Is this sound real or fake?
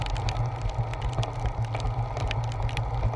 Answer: real